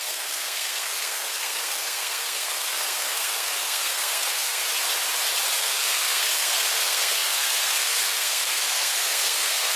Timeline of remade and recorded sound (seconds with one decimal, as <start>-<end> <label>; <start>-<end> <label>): 0.0-4.6 remade; 4.6-5.6 recorded; 5.6-9.8 remade

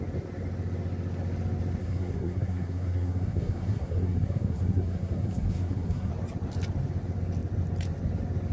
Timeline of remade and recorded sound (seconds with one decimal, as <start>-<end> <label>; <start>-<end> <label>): 0.0-1.8 recorded; 1.8-6.1 remade; 6.1-8.5 recorded

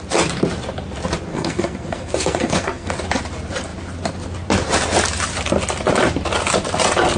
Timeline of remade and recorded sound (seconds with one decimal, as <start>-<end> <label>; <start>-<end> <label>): 0.0-1.3 recorded; 1.3-2.9 remade; 2.9-7.2 recorded